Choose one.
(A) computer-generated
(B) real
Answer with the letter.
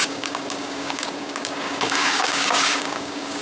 A